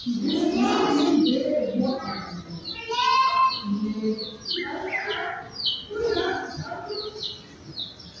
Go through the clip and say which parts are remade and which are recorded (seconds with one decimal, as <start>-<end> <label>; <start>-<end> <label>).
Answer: 0.0-8.2 recorded